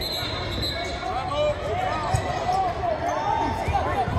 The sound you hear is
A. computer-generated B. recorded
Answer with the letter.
B